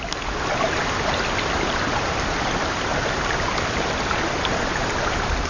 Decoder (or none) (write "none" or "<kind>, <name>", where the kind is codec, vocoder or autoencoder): none